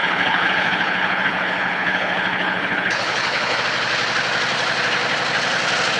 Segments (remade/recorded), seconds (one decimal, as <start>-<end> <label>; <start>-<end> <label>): 0.0-3.6 remade; 3.6-6.0 recorded